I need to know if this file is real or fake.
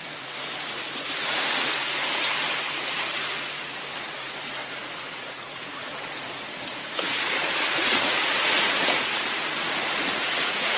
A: fake